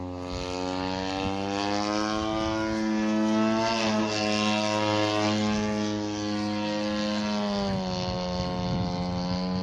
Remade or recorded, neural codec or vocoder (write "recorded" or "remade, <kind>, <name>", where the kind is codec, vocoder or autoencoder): recorded